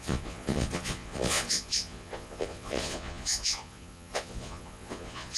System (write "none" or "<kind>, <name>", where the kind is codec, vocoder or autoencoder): vocoder, Vocos